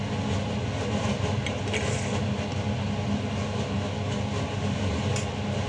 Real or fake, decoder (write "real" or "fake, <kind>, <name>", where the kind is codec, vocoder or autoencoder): real